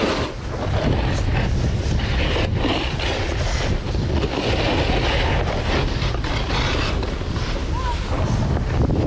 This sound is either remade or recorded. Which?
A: recorded